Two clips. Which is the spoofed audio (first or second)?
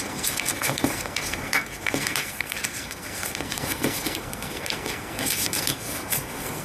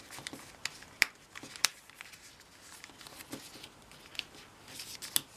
first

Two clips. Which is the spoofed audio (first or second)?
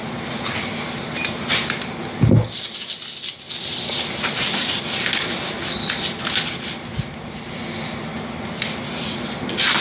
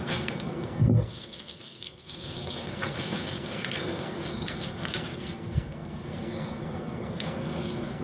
second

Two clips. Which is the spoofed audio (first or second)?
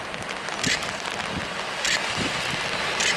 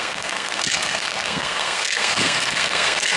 second